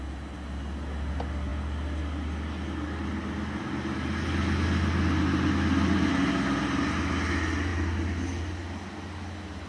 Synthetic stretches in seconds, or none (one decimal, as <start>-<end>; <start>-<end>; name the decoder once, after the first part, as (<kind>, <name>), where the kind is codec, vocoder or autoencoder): none